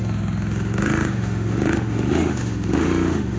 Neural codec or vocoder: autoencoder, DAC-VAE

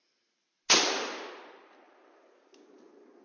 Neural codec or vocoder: none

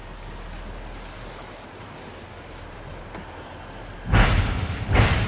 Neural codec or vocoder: none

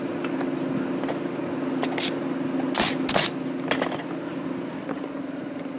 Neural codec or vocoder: none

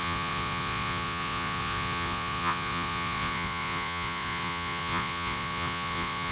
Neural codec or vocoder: vocoder, Vocos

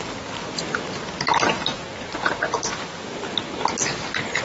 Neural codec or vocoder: none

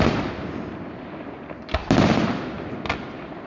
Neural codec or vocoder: none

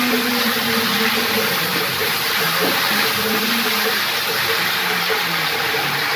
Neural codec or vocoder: vocoder, BigVGAN v2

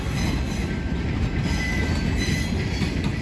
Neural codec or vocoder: none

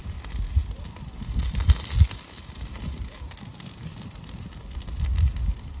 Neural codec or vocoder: none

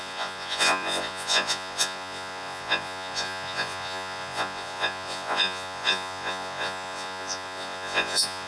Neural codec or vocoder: vocoder, Vocos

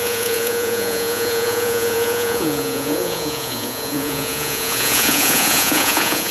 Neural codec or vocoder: vocoder, Vocos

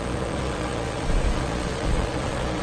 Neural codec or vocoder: vocoder, Vocos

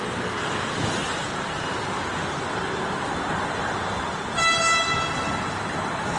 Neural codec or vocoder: none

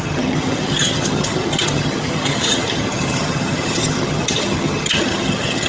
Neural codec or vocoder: vocoder, HiFi-GAN